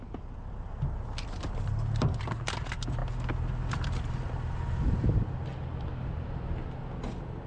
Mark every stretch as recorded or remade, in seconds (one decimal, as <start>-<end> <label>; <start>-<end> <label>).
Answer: 0.0-3.0 remade; 3.0-3.7 recorded; 3.7-5.5 remade; 5.5-7.0 recorded; 7.0-7.5 remade

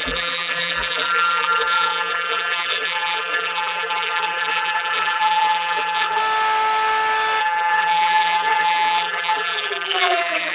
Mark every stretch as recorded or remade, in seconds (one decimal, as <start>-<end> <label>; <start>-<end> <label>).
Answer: 0.0-6.2 remade; 6.2-7.4 recorded; 7.4-10.5 remade

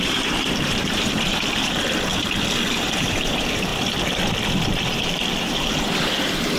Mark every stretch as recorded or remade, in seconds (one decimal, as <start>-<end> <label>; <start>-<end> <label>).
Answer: 0.0-2.1 remade; 2.1-2.8 recorded; 2.8-3.7 remade; 3.7-5.4 recorded; 5.4-6.6 remade

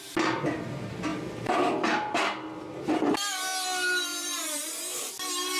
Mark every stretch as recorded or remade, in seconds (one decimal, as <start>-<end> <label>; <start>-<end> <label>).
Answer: 0.0-1.1 recorded; 1.1-1.7 remade; 1.7-4.1 recorded; 4.1-5.1 remade; 5.1-5.6 recorded